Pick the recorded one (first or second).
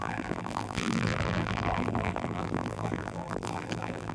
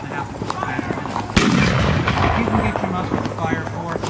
second